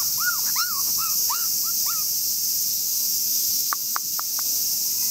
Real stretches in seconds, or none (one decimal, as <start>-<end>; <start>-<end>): 0.0-0.6; 1.5-2.9; 4.2-5.1